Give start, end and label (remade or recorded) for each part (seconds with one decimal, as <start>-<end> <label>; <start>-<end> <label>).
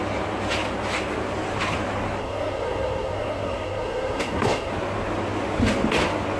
0.0-2.2 recorded; 2.2-4.7 remade; 4.7-6.4 recorded